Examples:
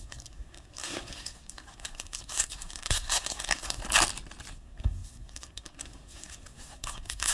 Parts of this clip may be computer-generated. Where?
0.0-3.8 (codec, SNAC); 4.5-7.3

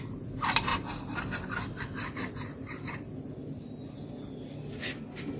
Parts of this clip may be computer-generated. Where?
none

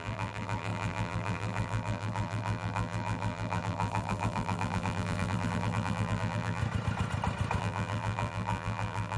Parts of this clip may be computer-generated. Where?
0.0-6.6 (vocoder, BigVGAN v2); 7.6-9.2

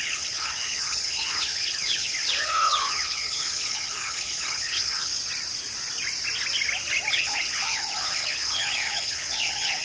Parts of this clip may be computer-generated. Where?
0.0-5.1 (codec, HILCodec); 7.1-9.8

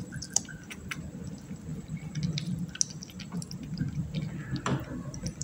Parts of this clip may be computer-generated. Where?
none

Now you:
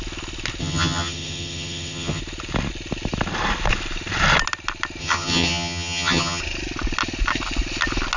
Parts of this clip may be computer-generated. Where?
0.6-2.2 (vocoder, HiFi-GAN); 5.0-6.4

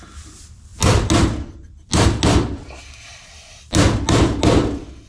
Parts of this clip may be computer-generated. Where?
none